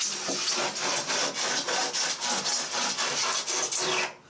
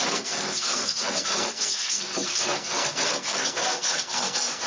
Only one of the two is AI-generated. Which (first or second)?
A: second